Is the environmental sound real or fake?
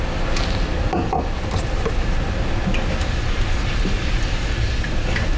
real